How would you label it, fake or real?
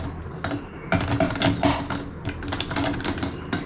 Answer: real